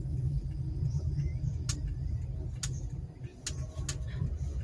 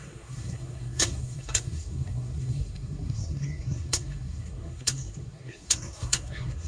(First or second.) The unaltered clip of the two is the first